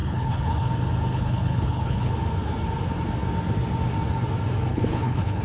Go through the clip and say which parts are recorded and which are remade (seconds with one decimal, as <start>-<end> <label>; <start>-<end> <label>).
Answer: 0.0-0.7 remade; 0.7-1.1 recorded; 1.1-2.1 remade; 2.1-4.7 recorded; 4.7-5.4 remade